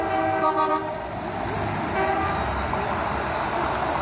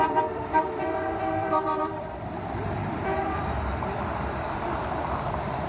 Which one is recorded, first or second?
first